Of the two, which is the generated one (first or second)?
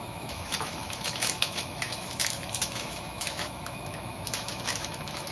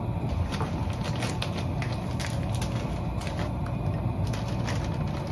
first